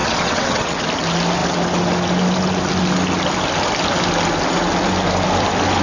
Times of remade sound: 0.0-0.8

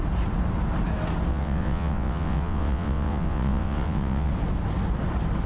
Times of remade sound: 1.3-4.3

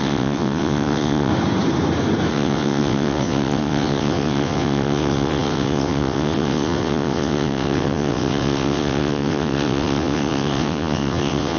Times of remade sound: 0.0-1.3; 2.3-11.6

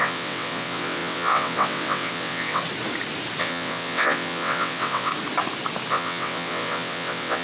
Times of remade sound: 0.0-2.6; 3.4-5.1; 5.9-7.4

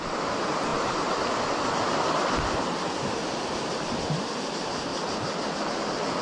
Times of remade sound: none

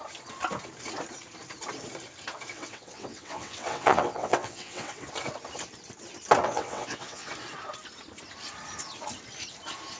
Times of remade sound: 2.5-5.1; 6.4-7.3

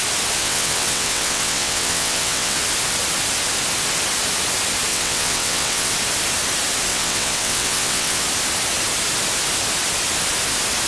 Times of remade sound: 0.4-2.6; 4.9-5.9; 6.9-8.2

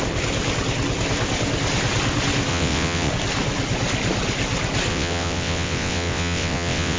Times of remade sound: 2.5-3.1; 4.9-7.0